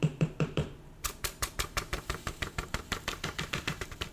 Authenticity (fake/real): fake